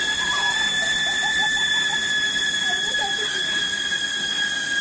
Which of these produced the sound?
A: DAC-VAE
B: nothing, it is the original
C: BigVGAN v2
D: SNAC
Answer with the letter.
B